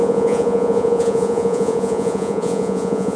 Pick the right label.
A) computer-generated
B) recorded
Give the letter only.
A